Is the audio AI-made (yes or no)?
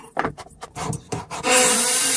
yes